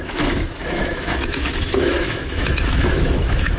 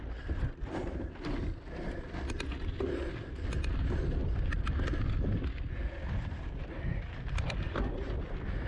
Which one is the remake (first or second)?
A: first